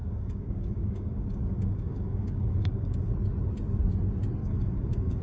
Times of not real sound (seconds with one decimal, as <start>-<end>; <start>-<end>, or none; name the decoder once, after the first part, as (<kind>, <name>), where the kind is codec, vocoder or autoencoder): 0.0-3.1 (codec, DAC); 4.4-5.2

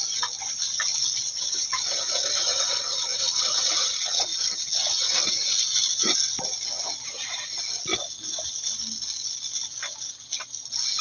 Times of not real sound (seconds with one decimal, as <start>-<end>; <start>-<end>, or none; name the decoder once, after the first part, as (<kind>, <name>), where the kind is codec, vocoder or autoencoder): none

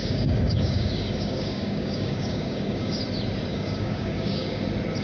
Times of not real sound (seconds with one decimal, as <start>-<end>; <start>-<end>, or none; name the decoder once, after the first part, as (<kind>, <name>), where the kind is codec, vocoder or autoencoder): 0.0-3.0 (codec, DAC); 3.5-4.6

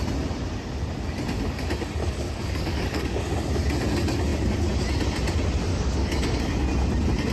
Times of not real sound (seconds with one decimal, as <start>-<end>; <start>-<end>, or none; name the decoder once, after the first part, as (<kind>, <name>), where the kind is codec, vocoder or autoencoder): 2.0-3.2 (codec, DAC); 5.7-6.4

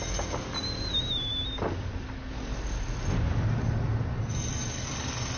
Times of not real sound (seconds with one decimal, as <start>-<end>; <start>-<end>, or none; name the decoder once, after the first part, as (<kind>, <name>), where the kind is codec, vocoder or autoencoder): none

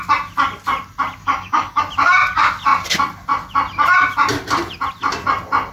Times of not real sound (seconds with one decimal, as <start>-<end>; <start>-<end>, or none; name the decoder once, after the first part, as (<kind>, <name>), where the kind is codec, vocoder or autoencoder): 1.2-1.8 (codec, DAC)